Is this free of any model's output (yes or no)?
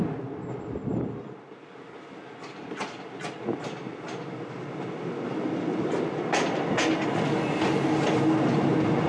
yes